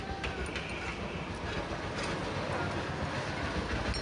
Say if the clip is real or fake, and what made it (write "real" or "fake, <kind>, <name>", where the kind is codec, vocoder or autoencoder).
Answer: real